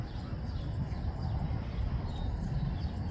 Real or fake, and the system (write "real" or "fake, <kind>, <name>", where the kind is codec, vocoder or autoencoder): real